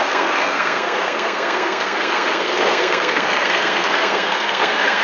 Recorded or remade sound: remade